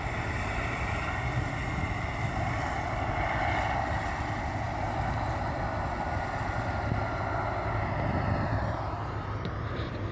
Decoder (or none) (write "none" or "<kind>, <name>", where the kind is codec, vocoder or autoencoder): none